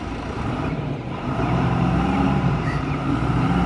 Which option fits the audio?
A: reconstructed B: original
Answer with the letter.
A